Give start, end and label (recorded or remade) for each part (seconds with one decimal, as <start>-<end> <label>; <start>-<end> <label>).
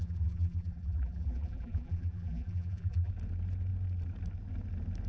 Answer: 0.0-3.1 remade; 3.1-5.1 recorded